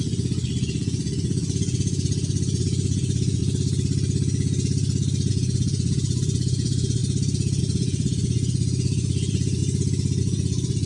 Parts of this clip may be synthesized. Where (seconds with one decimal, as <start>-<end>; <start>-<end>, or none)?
0.0-3.4; 5.3-7.0; 7.6-9.6; 10.2-10.9